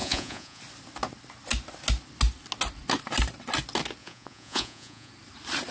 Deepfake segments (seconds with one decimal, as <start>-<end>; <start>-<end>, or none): 0.0-0.6; 4.0-5.1

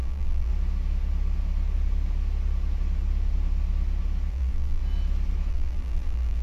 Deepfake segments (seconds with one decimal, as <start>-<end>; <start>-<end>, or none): 0.0-0.5; 4.3-4.8; 5.5-6.4

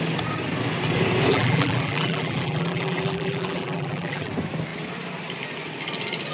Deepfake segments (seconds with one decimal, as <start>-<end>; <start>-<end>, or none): 1.3-4.3

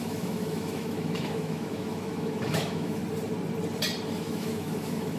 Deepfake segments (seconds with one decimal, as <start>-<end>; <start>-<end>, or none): 0.0-3.0; 4.2-5.2

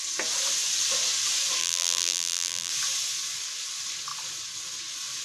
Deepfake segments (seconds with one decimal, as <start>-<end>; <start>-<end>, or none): 1.6-2.7

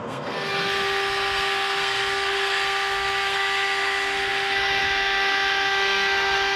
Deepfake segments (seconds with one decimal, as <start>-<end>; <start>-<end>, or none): 0.0-6.6